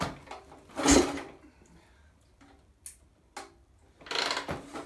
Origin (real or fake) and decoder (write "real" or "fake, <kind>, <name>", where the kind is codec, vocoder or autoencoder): real